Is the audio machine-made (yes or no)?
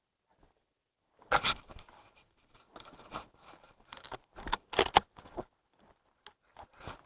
no